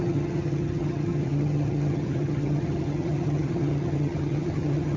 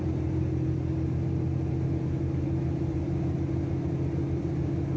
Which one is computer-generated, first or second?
first